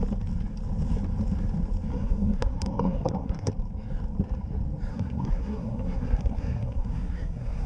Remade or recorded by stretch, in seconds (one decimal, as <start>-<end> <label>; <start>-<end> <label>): 0.0-1.9 recorded; 1.9-3.5 remade; 3.5-4.9 recorded; 4.9-7.7 remade